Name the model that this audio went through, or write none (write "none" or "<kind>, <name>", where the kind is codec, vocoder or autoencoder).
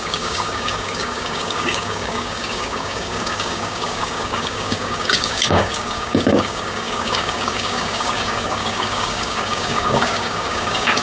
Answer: codec, DAC